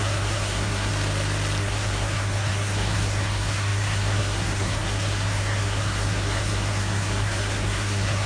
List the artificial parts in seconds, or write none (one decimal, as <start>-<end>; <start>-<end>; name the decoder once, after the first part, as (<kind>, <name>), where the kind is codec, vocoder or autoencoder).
0.0-0.9 (codec, SNAC); 1.6-8.3

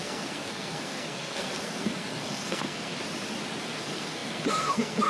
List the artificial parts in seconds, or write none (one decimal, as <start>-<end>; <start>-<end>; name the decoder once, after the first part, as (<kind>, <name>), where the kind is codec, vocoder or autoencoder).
0.0-2.9 (codec, SNAC); 3.6-5.1

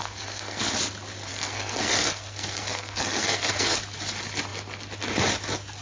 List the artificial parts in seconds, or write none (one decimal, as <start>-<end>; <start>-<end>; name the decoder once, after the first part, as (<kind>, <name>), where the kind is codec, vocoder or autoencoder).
0.0-0.6 (codec, SNAC); 1.3-3.8

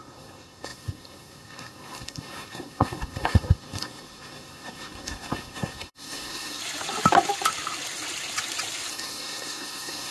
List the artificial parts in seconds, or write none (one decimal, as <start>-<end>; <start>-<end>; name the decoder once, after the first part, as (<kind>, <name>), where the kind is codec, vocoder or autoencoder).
0.0-6.6 (codec, SNAC); 8.9-10.1

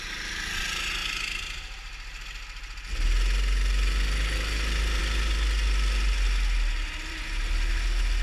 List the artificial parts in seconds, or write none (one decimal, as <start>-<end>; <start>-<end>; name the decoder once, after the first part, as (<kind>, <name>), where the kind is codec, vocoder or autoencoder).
none

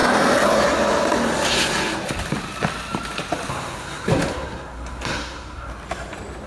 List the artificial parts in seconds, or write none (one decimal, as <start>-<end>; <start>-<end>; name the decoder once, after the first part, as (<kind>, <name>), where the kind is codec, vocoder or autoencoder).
3.5-5.7 (codec, SNAC)

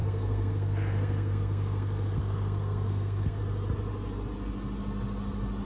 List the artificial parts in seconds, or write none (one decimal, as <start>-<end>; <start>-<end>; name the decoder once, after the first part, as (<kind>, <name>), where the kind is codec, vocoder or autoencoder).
0.0-3.4 (codec, SNAC)